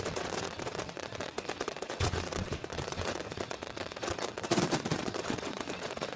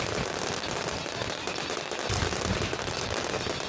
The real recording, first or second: second